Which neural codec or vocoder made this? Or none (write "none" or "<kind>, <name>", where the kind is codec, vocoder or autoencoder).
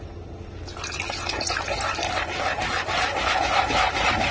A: none